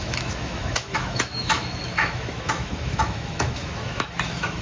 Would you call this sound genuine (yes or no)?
no